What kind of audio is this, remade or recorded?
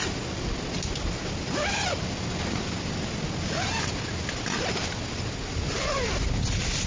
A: recorded